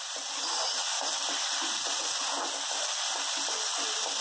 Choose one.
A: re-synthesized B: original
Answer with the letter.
B